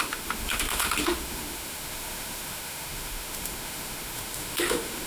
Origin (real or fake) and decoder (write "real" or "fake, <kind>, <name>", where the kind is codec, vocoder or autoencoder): fake, autoencoder, DAC-VAE